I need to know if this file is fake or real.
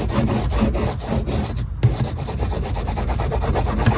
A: real